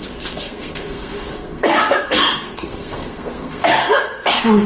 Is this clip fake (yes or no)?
yes